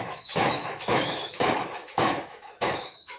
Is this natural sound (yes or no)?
no